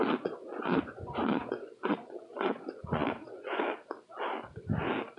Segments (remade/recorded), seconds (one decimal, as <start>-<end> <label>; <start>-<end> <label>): 0.0-0.5 recorded; 0.5-3.6 remade; 3.6-5.2 recorded